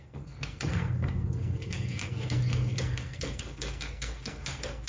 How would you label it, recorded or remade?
remade